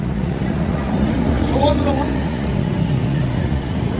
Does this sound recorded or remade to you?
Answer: remade